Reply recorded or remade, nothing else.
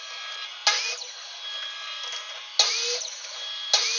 recorded